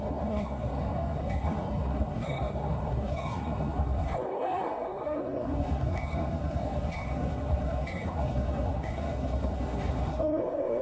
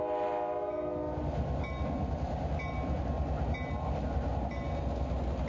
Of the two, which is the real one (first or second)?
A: second